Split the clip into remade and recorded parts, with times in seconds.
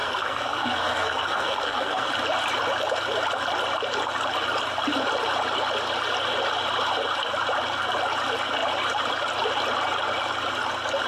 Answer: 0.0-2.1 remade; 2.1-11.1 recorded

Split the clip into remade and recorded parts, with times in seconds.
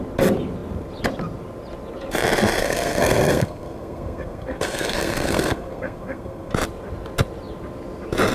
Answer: 0.0-2.6 recorded; 2.6-6.5 remade; 6.5-8.3 recorded